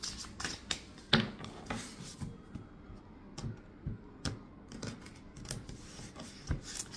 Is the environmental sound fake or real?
real